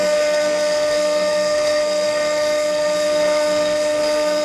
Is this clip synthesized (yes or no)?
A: yes